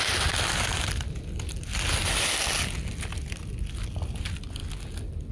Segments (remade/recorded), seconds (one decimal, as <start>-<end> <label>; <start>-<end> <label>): 0.0-5.3 recorded